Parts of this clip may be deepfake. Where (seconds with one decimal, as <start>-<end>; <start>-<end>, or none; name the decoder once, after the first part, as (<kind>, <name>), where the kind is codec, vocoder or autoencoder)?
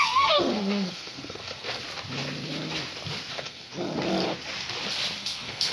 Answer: 0.0-1.8 (codec, SNAC); 3.3-3.7; 5.2-5.7